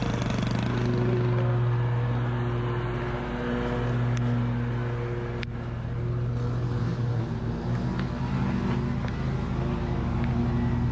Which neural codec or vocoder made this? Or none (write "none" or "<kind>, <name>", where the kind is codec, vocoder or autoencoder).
none